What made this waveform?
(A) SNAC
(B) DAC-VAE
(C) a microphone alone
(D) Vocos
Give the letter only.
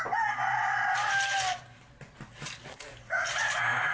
C